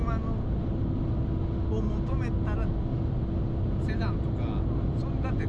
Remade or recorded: recorded